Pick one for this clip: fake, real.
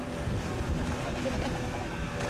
real